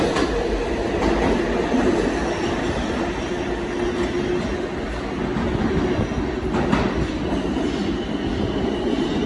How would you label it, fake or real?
real